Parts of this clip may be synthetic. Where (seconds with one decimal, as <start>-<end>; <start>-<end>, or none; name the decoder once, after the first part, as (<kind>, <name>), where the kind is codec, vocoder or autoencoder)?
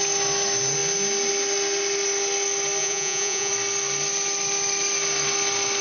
2.8-3.5 (vocoder, Vocos)